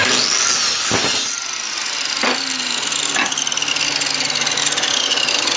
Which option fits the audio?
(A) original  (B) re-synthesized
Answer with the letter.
A